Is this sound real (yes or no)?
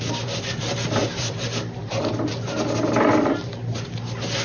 yes